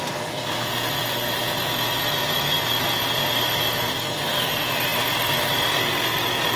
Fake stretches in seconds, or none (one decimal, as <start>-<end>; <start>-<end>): none